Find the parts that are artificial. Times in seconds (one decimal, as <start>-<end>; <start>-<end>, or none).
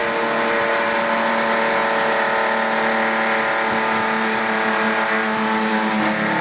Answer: none